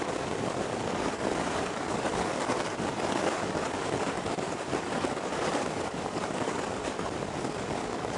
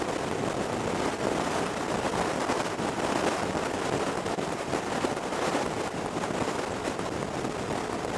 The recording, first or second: second